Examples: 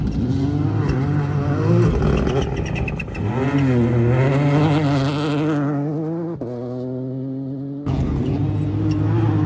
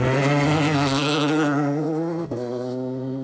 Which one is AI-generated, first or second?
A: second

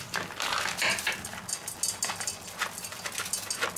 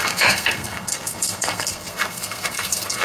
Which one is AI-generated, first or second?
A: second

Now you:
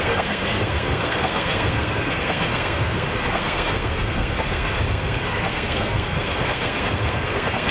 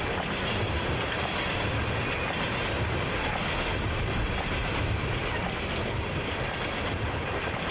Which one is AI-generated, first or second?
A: first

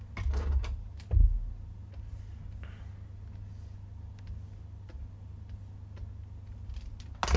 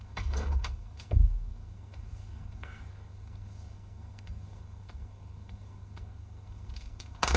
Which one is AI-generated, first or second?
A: second